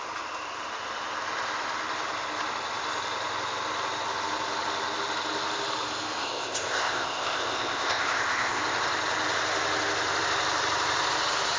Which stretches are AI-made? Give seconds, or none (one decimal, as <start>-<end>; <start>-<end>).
6.2-8.6